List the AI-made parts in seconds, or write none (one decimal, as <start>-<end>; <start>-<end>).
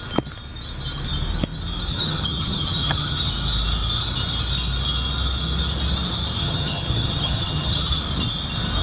1.9-3.3; 6.4-8.0